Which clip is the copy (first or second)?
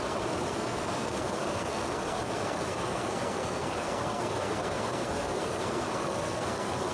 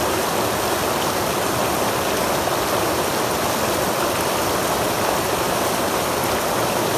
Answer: first